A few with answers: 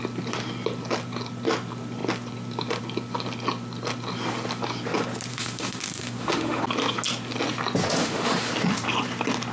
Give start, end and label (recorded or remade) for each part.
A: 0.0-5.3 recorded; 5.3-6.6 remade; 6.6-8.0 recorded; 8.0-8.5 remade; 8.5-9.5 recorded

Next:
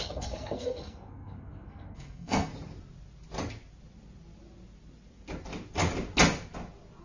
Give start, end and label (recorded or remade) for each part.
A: 0.0-2.5 remade; 2.5-7.0 recorded

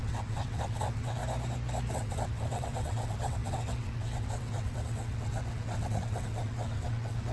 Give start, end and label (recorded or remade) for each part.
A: 0.0-1.2 remade; 1.2-1.9 recorded; 1.9-7.3 remade

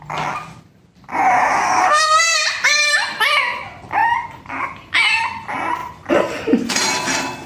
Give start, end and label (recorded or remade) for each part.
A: 0.0-1.6 recorded; 1.6-2.4 remade; 2.4-7.5 recorded

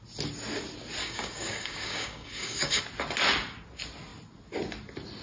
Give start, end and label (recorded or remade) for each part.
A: 0.0-1.0 recorded; 1.0-2.8 remade; 2.8-5.2 recorded